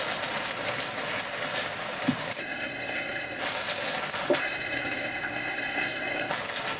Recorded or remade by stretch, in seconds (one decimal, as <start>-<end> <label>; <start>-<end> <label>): 0.0-2.4 recorded; 2.4-3.4 remade; 3.4-4.4 recorded; 4.4-6.3 remade; 6.3-6.8 recorded